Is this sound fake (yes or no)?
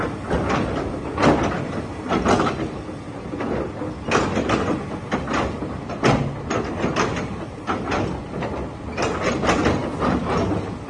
no